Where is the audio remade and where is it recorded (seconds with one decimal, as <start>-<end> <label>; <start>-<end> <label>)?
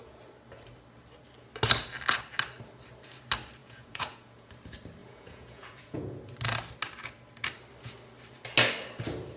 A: 0.0-3.6 recorded; 3.6-4.5 remade; 4.5-5.0 recorded; 5.0-6.2 remade; 6.2-9.4 recorded